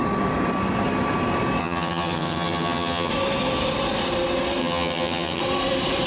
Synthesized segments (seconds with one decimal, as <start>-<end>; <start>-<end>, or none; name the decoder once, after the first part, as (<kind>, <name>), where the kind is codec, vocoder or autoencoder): 1.6-3.1 (vocoder, HiFi-GAN); 4.6-5.4